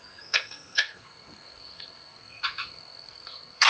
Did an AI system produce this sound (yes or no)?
yes